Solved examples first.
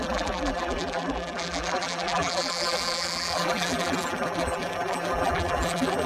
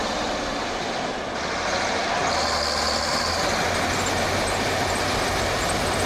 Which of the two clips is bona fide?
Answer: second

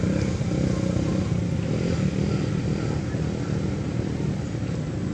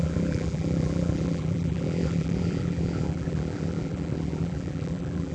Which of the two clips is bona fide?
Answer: first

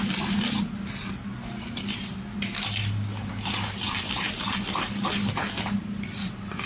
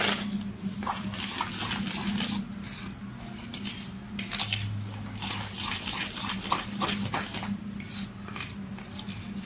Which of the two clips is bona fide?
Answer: second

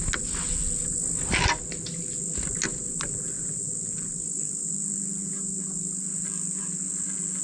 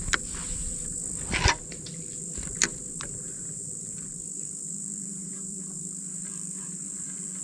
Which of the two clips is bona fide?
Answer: first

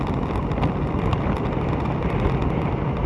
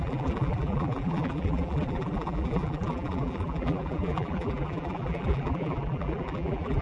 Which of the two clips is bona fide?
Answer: first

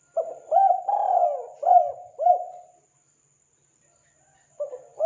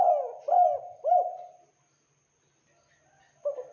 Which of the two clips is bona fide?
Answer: second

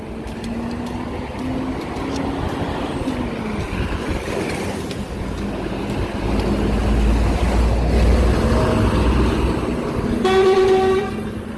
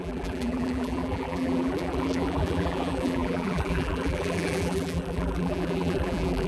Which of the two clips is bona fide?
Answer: first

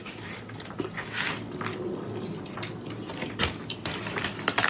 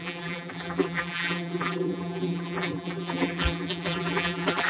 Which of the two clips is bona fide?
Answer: first